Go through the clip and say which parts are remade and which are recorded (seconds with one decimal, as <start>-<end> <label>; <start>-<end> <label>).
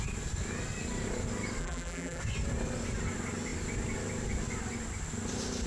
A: 0.0-1.6 recorded; 1.6-2.2 remade; 2.2-5.7 recorded